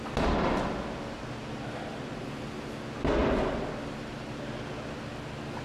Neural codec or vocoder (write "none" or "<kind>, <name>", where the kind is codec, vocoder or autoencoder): none